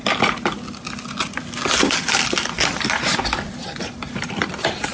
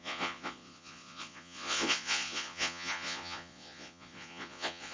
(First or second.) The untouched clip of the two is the first